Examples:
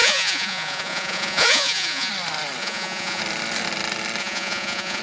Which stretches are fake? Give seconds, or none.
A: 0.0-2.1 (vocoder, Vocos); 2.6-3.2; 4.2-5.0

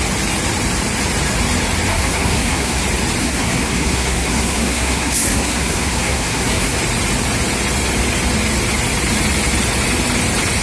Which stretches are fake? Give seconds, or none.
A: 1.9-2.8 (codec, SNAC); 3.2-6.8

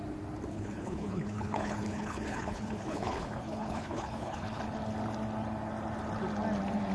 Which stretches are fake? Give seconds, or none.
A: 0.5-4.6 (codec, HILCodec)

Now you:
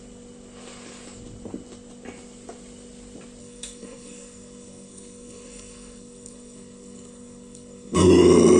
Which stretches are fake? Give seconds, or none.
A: 3.4-8.1 (codec, SNAC)